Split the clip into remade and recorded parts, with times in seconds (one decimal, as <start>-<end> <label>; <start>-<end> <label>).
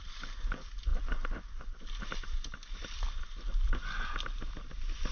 0.0-5.1 recorded